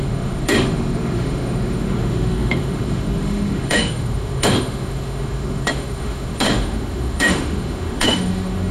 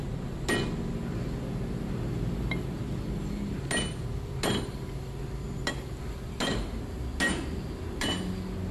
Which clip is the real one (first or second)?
second